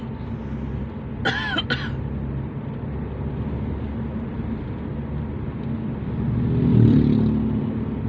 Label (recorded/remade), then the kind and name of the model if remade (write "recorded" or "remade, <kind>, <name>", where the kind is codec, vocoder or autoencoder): recorded